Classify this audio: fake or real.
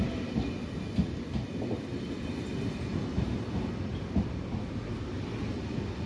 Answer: real